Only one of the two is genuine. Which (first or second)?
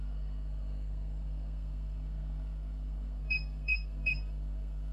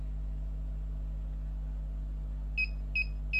second